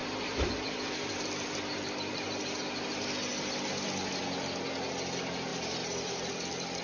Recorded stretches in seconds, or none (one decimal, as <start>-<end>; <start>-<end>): 2.4-5.5